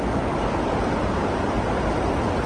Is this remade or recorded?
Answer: recorded